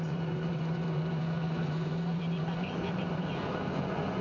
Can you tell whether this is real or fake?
fake